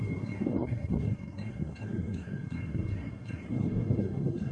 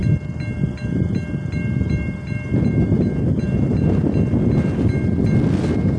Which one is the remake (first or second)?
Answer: first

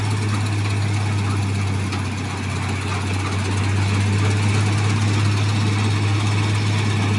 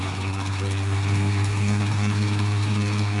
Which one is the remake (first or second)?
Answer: second